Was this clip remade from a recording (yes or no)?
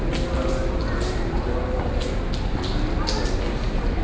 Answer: no